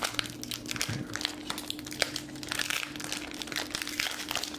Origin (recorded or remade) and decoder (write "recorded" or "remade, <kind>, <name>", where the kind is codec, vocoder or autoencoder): recorded